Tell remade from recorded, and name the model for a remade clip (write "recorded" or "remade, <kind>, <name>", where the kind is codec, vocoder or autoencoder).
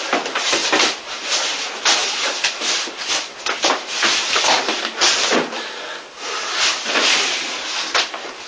recorded